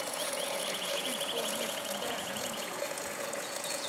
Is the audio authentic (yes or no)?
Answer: no